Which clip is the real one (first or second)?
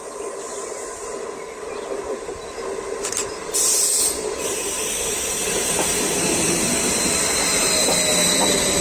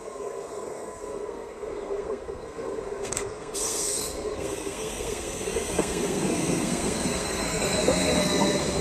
first